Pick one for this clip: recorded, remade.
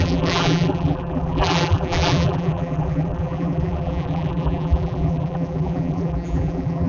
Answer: remade